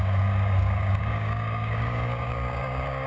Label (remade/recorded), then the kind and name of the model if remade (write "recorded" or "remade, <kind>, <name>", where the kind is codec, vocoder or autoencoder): remade, codec, DAC